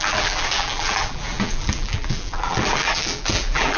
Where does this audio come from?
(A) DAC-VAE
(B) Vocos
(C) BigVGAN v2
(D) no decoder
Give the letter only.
C